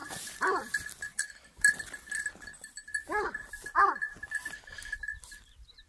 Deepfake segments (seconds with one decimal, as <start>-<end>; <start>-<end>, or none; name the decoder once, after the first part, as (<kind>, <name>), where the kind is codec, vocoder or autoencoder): 0.0-5.1 (vocoder, BigVGAN v2)